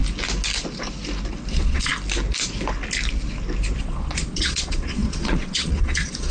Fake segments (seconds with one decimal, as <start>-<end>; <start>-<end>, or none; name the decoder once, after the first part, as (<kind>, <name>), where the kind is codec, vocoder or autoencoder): 1.5-1.9 (vocoder, Vocos); 3.8-6.3